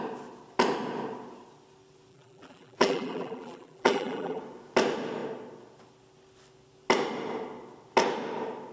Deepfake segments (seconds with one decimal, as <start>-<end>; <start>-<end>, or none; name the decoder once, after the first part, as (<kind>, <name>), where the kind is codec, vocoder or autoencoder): 2.1-4.4 (vocoder, BigVGAN v2)